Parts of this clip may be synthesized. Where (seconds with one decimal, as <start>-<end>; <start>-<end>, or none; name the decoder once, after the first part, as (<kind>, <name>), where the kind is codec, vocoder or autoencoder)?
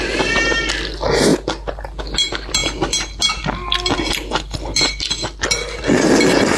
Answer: none